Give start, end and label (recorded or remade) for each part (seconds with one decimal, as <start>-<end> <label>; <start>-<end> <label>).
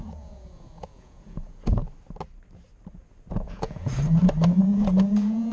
0.0-1.8 remade; 1.8-3.3 recorded; 3.3-3.9 remade; 3.9-4.6 recorded; 4.6-5.5 remade